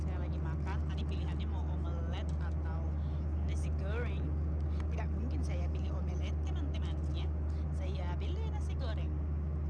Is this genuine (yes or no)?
yes